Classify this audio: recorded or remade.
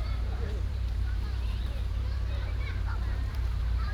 remade